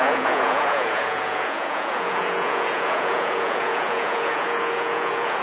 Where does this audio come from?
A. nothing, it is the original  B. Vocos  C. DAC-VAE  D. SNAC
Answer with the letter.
B